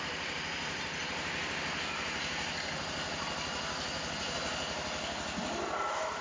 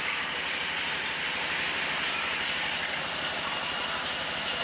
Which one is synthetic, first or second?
second